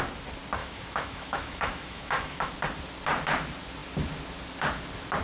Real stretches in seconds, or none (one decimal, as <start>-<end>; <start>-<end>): 0.0-0.6; 2.5-5.2